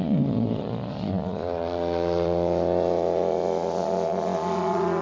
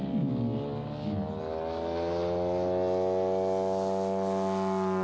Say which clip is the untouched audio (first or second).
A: second